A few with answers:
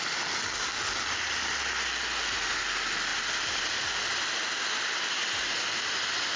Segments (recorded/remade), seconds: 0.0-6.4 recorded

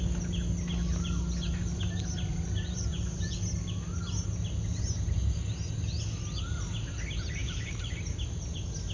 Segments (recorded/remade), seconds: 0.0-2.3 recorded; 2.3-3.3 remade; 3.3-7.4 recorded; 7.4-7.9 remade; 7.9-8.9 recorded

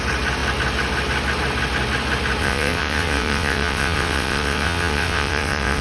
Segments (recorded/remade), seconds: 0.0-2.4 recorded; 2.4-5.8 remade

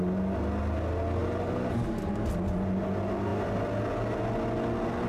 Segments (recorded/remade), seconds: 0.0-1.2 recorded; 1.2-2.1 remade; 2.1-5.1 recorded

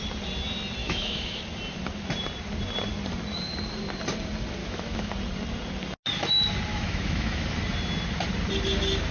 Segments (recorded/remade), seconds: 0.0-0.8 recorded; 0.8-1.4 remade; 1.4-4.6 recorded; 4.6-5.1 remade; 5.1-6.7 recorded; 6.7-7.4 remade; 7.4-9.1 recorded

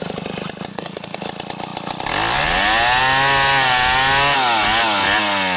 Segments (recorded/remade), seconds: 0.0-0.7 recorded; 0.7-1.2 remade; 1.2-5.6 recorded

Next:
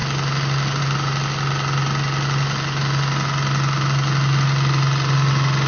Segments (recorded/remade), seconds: 0.0-5.7 recorded

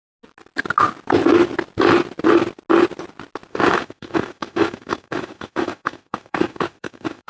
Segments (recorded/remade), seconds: 0.0-3.5 recorded; 3.5-7.3 remade